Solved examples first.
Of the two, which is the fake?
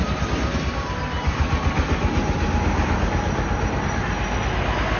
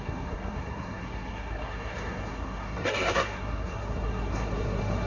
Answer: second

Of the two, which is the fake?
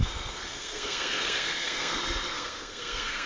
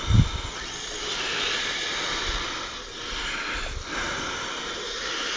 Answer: first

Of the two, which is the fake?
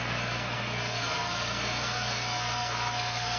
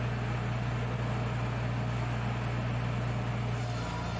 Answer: first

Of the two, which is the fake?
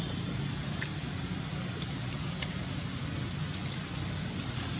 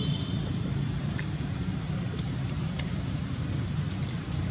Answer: second